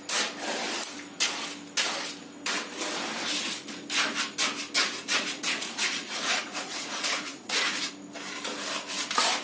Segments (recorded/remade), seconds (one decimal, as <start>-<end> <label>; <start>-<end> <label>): 0.0-4.8 recorded; 4.8-7.9 remade; 7.9-9.4 recorded